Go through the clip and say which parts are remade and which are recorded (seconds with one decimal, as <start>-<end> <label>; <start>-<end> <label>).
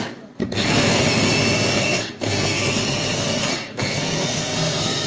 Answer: 0.0-0.4 recorded; 0.4-1.0 remade; 1.0-1.8 recorded; 1.8-5.1 remade